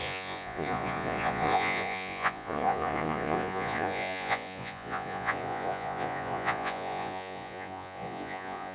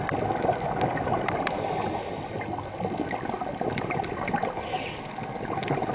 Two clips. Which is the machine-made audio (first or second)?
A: first